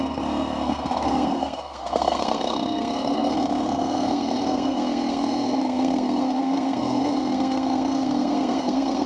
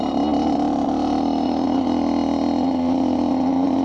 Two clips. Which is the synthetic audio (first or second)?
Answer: first